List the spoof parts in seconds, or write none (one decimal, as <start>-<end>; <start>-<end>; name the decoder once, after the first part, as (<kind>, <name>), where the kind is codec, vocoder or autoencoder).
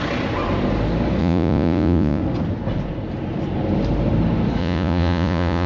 1.2-2.2 (vocoder, Vocos); 4.6-5.7